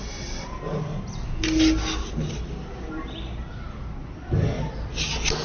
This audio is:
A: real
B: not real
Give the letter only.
A